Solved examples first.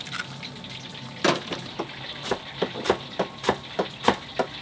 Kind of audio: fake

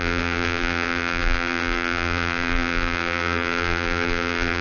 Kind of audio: fake